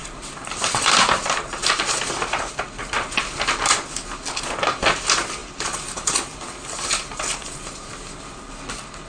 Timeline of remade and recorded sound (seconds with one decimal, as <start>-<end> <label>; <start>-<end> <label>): 0.0-2.6 remade; 2.6-5.4 recorded; 5.4-8.1 remade; 8.1-9.1 recorded